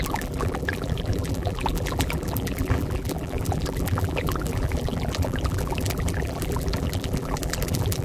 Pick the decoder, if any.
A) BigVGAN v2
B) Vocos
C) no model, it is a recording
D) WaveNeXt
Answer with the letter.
A